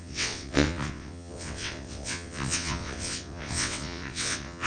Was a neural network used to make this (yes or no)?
yes